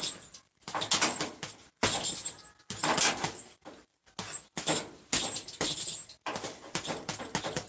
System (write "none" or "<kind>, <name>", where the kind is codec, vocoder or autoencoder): none